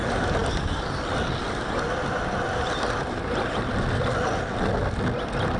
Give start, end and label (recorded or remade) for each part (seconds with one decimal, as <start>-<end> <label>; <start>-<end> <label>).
0.0-5.6 recorded